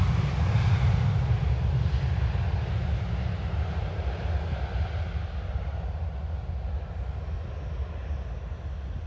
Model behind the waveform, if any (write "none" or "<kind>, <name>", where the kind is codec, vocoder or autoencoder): none